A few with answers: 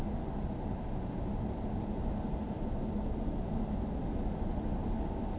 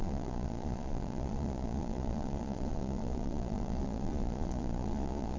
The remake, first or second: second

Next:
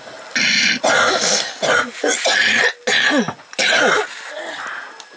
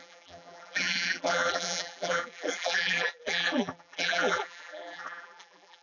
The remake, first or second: second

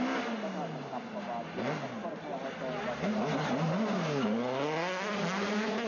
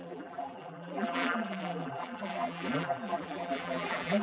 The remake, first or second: second